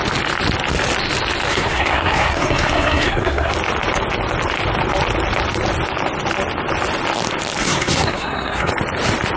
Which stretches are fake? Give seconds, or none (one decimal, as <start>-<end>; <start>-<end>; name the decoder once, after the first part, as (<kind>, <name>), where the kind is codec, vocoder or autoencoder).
1.5-3.5 (codec, SNAC); 7.6-8.7

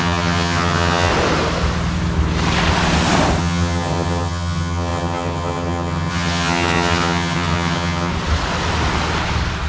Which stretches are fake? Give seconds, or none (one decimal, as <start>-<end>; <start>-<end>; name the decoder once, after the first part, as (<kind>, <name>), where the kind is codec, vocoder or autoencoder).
0.0-1.1 (vocoder, HiFi-GAN); 3.4-8.1

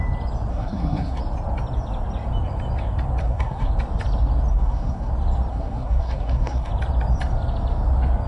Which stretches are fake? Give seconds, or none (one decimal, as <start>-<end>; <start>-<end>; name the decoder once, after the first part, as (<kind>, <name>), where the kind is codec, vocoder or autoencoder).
0.5-1.2 (codec, SNAC); 3.2-3.7; 4.5-5.1; 5.5-6.7

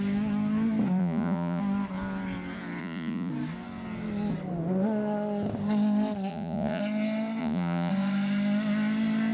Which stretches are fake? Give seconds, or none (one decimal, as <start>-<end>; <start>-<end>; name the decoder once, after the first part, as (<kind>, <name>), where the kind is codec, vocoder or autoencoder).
1.0-1.6 (vocoder, Vocos); 2.8-3.3; 6.3-6.8; 7.4-7.9